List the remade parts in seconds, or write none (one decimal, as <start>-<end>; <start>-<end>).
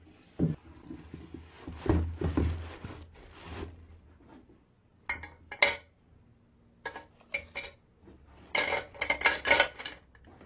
none